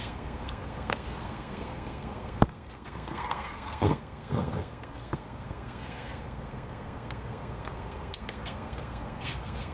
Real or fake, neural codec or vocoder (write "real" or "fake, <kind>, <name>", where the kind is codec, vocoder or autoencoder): fake, codec, SNAC